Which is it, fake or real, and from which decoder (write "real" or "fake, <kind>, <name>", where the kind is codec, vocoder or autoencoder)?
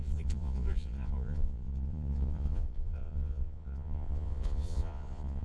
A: fake, vocoder, Vocos